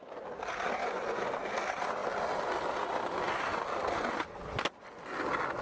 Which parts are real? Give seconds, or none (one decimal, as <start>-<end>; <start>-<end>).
0.0-0.8; 1.3-5.6